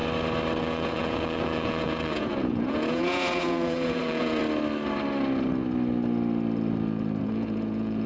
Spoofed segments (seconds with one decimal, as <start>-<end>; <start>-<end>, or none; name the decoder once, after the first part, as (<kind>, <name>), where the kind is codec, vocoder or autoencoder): 0.6-4.4 (vocoder, Vocos); 7.2-8.1